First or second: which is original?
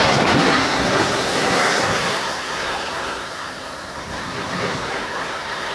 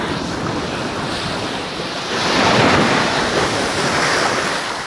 second